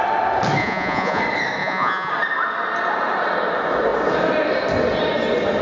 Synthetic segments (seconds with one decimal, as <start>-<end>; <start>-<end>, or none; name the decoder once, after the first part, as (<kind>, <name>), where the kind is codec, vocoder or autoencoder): 0.6-1.2 (vocoder, Vocos); 1.6-2.1